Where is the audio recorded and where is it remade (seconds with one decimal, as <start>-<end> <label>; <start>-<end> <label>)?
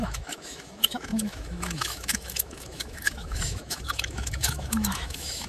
0.0-5.5 remade